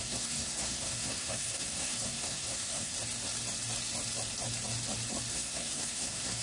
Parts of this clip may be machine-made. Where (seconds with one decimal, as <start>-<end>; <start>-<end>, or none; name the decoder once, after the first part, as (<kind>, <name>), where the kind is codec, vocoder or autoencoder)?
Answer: 0.0-2.9 (codec, SNAC); 5.3-6.4